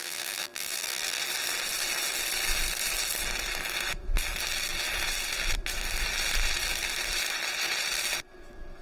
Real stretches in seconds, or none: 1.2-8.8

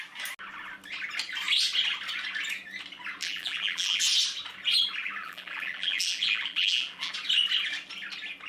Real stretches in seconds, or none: 0.0-3.2; 4.0-5.2; 7.1-8.5

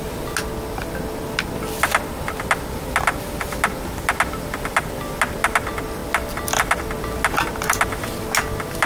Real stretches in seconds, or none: 0.0-8.9

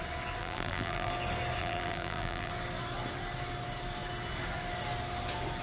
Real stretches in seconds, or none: 0.0-0.4; 1.1-1.6; 2.5-5.6

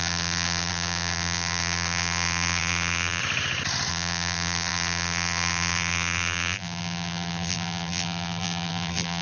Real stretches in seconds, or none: 3.2-3.9

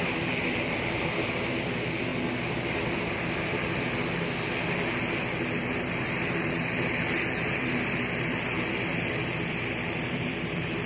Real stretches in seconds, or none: none

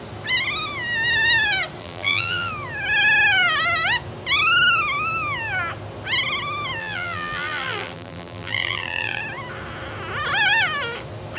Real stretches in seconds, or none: 0.0-1.8; 2.5-6.8; 9.2-11.4

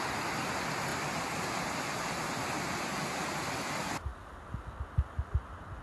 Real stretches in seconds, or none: 0.0-0.9; 3.5-5.8